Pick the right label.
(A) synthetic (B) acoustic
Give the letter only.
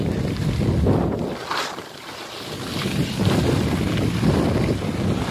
B